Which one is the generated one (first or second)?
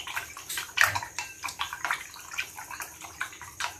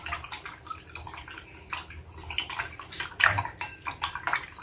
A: first